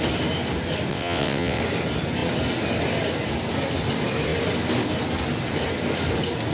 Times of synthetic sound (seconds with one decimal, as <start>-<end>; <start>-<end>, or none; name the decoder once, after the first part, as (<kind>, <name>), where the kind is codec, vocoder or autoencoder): 0.9-1.6 (vocoder, WaveNeXt)